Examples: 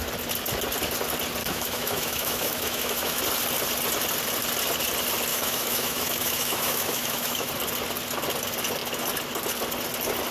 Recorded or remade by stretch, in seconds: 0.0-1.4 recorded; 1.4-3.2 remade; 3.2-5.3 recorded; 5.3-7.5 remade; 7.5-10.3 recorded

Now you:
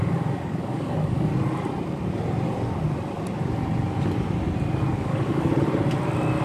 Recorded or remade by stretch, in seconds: 0.0-1.3 remade; 1.3-4.9 recorded; 4.9-5.5 remade; 5.5-6.4 recorded

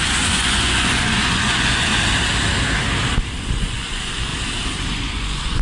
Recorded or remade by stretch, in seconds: 0.0-1.9 remade; 1.9-3.4 recorded; 3.4-4.3 remade; 4.3-4.9 recorded; 4.9-5.6 remade

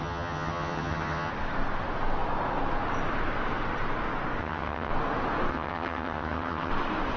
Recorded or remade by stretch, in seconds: 0.0-1.3 remade; 1.3-4.4 recorded; 4.4-4.9 remade; 4.9-5.5 recorded; 5.5-6.7 remade; 6.7-7.2 recorded

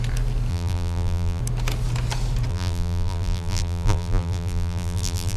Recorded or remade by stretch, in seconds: 0.0-0.5 recorded; 0.5-1.4 remade; 1.4-2.5 recorded; 2.5-5.4 remade

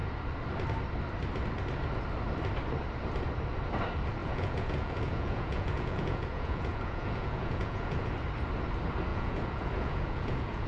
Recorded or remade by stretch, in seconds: 0.0-4.2 recorded; 4.2-8.1 remade; 8.1-9.1 recorded; 9.1-10.7 remade

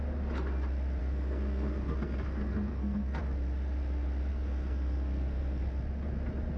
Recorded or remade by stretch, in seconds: 0.0-1.0 recorded; 1.0-3.2 remade; 3.2-4.3 recorded; 4.3-5.6 remade; 5.6-6.6 recorded